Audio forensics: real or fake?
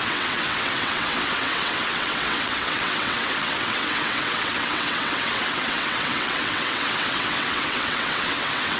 fake